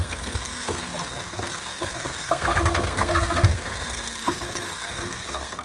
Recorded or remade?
remade